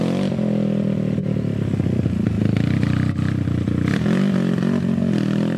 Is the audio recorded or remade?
recorded